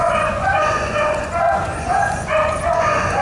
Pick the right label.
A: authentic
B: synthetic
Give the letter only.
B